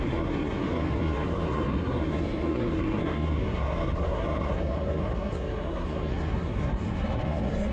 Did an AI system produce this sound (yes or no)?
yes